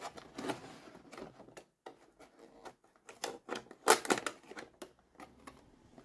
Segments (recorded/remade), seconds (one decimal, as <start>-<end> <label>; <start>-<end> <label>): 0.0-6.0 recorded